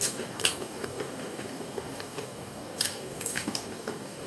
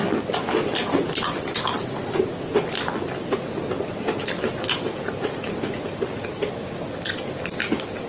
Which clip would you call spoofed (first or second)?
first